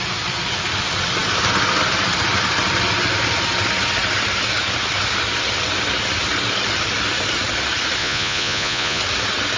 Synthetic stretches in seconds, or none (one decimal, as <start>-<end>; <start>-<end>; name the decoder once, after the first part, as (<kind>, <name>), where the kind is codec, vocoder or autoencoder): 8.0-9.0 (vocoder, Vocos)